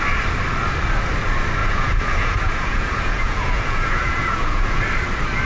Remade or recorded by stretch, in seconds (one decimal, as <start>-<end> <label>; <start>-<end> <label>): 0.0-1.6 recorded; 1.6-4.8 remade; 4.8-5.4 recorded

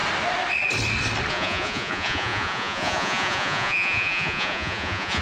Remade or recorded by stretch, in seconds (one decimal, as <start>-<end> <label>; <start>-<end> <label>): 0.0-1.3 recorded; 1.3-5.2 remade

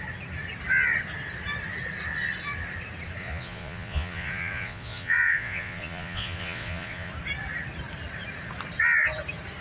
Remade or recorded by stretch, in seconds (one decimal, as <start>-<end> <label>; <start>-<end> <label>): 0.0-3.2 recorded; 3.2-7.1 remade; 7.1-9.6 recorded

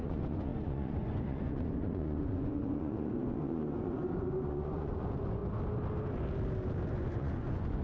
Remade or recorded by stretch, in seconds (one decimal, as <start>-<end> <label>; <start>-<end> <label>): 0.0-5.4 remade; 5.4-6.9 recorded; 6.9-7.8 remade

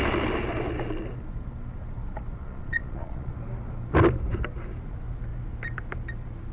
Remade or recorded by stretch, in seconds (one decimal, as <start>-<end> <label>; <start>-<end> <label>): 0.0-2.4 recorded; 2.4-3.3 remade; 3.3-6.5 recorded

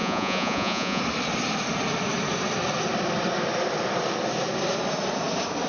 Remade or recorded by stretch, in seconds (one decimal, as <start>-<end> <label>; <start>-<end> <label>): 0.0-1.0 remade; 1.0-5.7 recorded

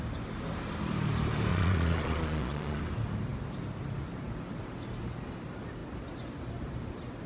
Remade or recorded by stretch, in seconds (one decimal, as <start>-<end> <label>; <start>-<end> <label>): 0.0-1.5 recorded; 1.5-2.8 remade; 2.8-7.3 recorded